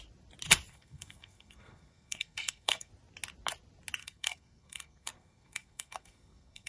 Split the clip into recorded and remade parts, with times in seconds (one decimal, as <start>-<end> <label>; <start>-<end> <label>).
0.0-0.7 recorded; 0.7-2.9 remade; 2.9-4.0 recorded; 4.0-6.7 remade